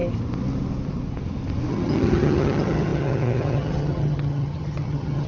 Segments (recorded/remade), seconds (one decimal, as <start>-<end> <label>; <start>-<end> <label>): 0.0-1.7 recorded; 1.7-5.3 remade